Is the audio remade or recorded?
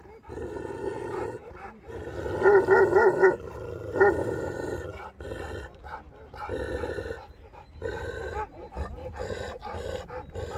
recorded